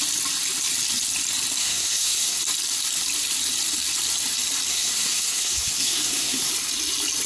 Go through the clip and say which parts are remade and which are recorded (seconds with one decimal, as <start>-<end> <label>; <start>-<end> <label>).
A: 0.0-1.6 recorded; 1.6-2.4 remade; 2.4-4.7 recorded; 4.7-6.5 remade; 6.5-7.3 recorded